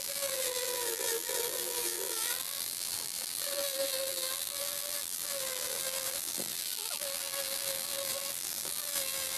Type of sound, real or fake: fake